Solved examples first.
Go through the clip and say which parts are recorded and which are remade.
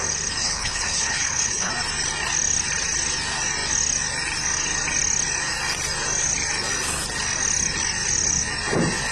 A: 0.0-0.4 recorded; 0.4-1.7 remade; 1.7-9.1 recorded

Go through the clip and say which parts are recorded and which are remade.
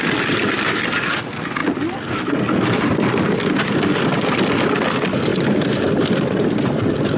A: 0.0-5.3 recorded; 5.3-7.2 remade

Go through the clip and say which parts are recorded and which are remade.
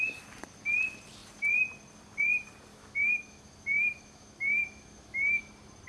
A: 0.0-2.7 recorded; 2.7-5.4 remade; 5.4-5.9 recorded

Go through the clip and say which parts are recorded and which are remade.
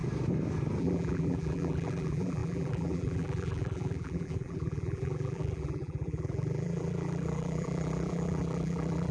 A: 0.0-0.8 recorded; 0.8-9.1 remade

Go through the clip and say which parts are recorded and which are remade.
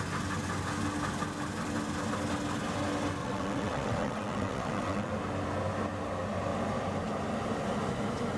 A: 0.0-3.2 recorded; 3.2-5.1 remade; 5.1-8.4 recorded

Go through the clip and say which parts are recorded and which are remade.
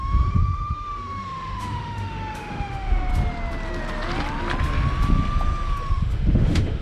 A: 0.0-3.1 remade; 3.1-5.9 recorded; 5.9-6.8 remade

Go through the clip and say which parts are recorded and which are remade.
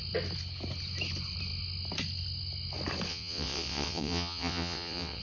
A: 0.0-3.1 recorded; 3.1-5.2 remade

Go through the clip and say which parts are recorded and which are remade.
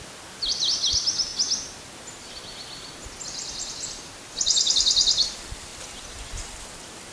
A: 0.0-7.1 recorded